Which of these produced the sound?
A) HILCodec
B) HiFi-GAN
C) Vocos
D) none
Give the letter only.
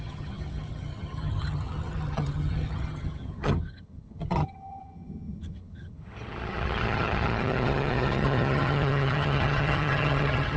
B